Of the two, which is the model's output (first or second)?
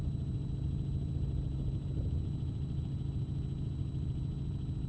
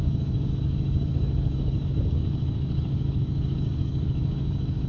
second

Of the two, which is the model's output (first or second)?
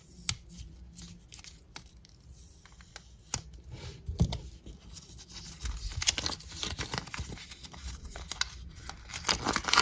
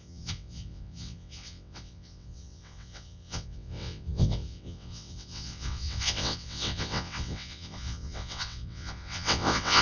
second